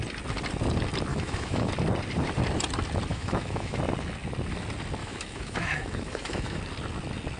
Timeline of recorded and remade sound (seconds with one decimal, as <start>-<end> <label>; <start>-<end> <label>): 0.0-1.1 recorded; 1.1-1.7 remade; 1.7-3.1 recorded; 3.1-3.8 remade; 3.8-5.0 recorded; 5.0-6.6 remade; 6.6-7.4 recorded

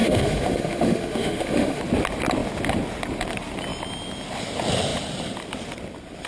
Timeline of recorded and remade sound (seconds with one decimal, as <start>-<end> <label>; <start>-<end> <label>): 0.0-1.8 remade; 1.8-6.3 recorded

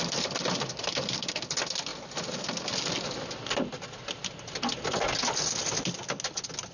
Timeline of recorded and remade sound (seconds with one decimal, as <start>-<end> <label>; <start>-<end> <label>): 0.0-6.7 recorded